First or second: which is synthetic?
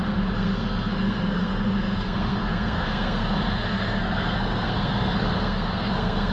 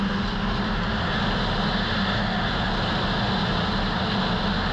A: first